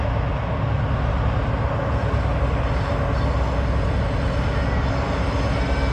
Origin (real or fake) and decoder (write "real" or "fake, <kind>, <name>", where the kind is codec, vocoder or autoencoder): real